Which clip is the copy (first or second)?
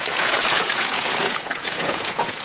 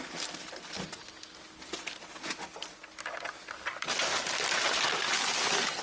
first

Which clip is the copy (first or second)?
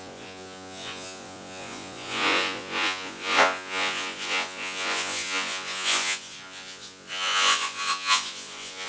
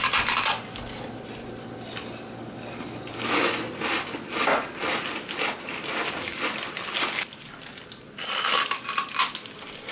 first